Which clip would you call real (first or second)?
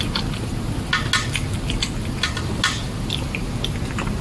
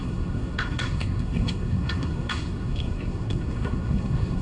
first